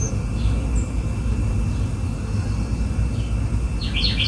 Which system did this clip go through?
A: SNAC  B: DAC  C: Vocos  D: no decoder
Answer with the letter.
D